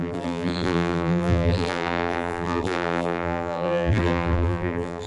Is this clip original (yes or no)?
no